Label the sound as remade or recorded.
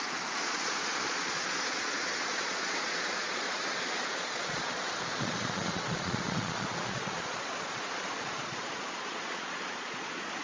remade